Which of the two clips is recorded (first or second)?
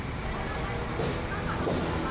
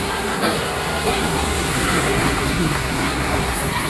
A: first